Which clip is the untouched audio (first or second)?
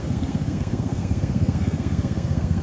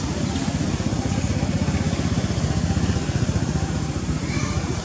second